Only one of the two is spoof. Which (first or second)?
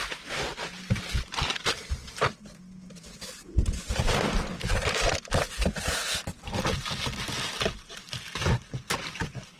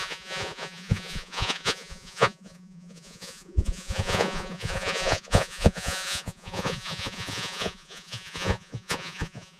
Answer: second